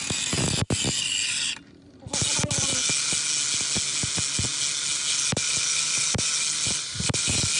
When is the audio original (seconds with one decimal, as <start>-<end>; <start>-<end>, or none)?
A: 0.0-7.6